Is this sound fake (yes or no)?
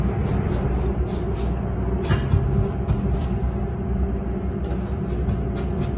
no